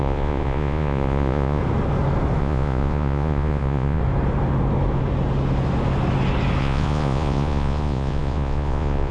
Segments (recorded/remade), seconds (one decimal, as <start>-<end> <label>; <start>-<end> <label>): 0.0-1.6 remade; 1.6-2.4 recorded; 2.4-4.0 remade; 4.0-6.6 recorded; 6.6-9.1 remade